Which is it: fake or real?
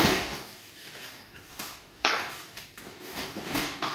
fake